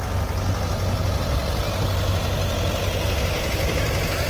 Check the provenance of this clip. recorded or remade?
recorded